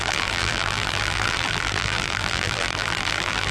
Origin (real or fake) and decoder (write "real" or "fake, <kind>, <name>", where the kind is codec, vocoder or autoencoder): fake, vocoder, BigVGAN v2